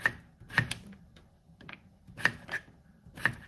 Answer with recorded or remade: recorded